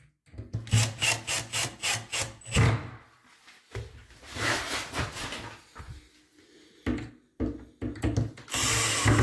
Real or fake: real